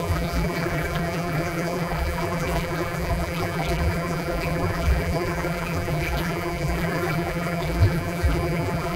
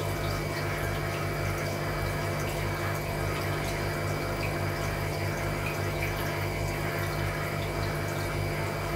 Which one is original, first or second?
second